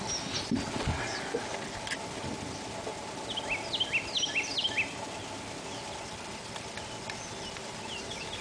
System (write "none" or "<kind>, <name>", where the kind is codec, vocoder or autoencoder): none